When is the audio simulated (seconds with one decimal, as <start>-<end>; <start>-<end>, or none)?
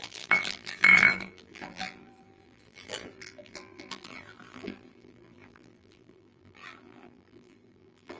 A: 0.0-8.2